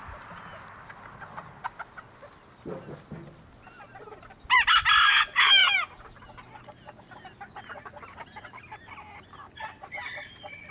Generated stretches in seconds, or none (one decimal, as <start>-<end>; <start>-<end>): none